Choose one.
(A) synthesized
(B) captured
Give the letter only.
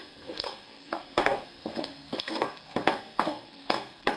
A